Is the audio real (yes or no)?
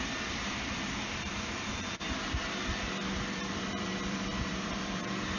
no